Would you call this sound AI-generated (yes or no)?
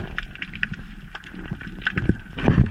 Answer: no